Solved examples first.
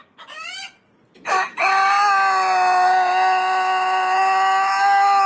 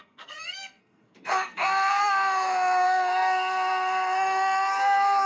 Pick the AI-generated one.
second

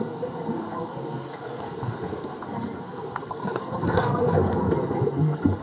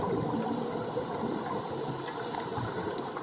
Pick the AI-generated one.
first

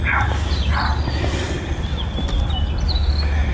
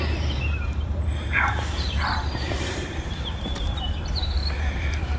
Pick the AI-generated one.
second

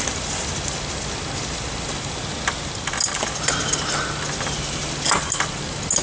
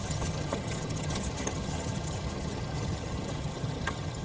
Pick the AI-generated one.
second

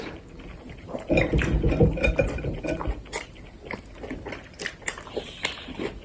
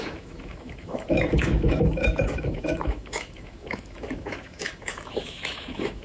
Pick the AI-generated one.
second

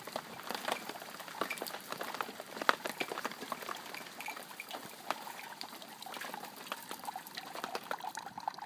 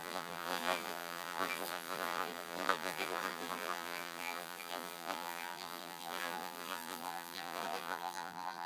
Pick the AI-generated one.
second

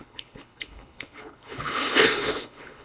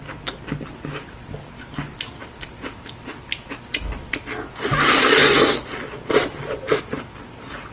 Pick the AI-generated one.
first